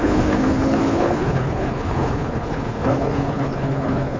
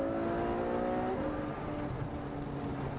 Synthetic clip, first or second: first